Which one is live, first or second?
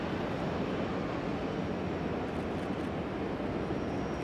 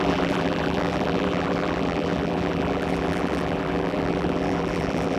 first